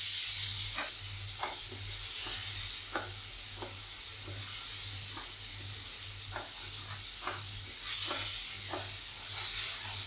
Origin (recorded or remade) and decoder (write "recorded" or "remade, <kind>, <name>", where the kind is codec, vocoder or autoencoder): recorded